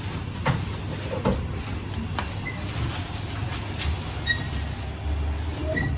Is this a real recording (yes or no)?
yes